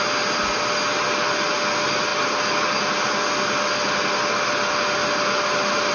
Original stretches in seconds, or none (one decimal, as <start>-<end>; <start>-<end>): 0.0-5.9